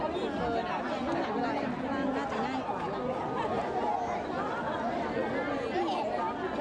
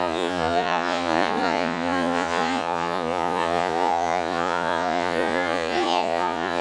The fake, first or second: second